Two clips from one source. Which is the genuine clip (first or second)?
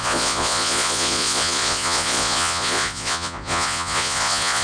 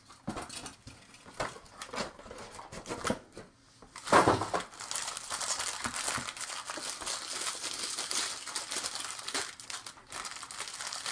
second